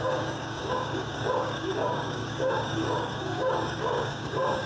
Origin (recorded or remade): remade